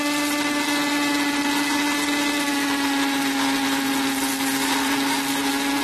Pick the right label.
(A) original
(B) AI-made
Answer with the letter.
B